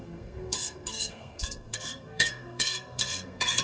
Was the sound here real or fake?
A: fake